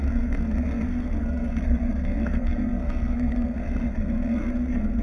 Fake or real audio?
fake